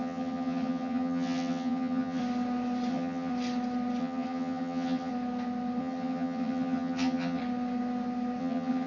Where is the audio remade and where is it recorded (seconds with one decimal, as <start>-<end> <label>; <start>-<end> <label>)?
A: 0.0-2.2 remade; 2.2-2.9 recorded; 2.9-3.3 remade; 3.3-4.0 recorded; 4.0-5.1 remade; 5.1-5.8 recorded; 5.8-7.4 remade; 7.4-8.4 recorded; 8.4-8.9 remade